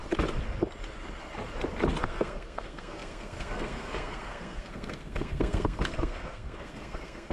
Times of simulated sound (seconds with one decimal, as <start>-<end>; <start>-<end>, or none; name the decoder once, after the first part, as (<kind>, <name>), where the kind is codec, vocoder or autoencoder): 2.0-7.3 (codec, SNAC)